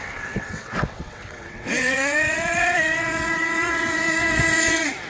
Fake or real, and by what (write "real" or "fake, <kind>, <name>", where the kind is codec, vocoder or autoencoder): fake, vocoder, WaveNeXt